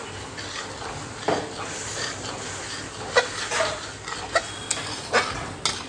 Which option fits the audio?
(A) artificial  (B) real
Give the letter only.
B